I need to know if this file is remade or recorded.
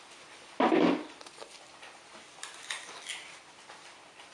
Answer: recorded